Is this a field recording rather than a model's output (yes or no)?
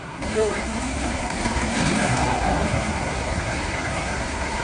no